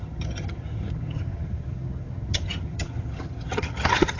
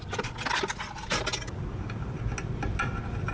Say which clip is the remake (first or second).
first